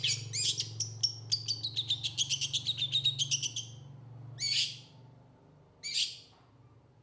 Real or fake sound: real